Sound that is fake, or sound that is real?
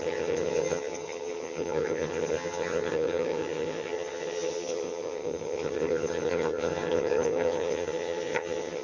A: fake